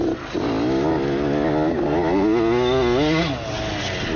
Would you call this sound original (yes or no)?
yes